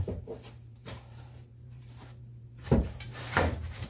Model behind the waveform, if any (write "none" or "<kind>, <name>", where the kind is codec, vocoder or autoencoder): vocoder, BigVGAN v2